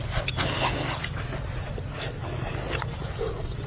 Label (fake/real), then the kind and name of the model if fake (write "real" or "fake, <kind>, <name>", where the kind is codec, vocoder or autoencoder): real